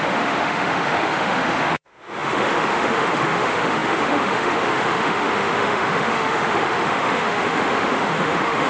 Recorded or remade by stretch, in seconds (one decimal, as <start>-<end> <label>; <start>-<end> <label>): 0.0-8.7 remade